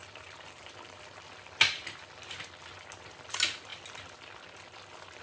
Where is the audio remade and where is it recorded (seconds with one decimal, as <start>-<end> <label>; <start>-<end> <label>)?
0.0-5.2 recorded